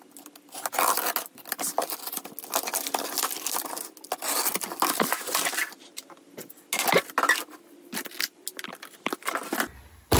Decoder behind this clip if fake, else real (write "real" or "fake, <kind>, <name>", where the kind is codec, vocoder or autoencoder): real